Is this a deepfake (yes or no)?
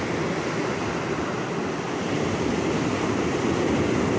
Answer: no